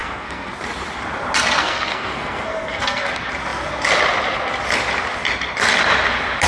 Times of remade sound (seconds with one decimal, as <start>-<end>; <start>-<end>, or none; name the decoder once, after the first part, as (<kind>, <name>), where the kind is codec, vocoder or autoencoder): 0.0-0.5 (codec, SNAC); 1.6-3.1